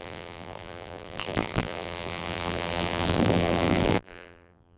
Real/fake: fake